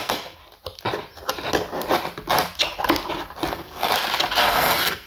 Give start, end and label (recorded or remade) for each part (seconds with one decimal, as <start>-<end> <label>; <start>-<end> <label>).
0.0-0.4 remade; 0.4-3.5 recorded; 3.5-3.9 remade; 3.9-4.4 recorded; 4.4-5.1 remade